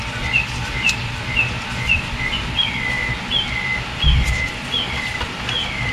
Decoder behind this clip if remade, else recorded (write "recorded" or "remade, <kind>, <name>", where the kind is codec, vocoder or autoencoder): recorded